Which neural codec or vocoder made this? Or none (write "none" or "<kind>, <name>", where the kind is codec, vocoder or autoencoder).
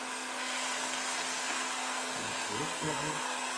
codec, SNAC